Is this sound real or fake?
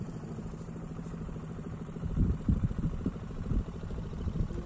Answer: fake